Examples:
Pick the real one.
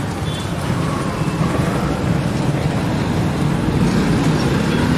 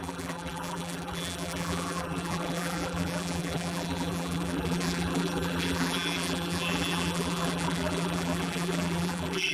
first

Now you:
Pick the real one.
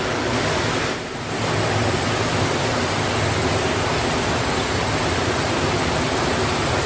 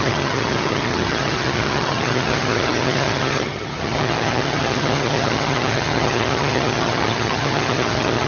first